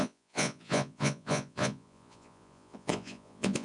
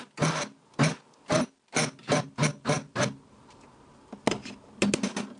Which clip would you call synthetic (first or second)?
first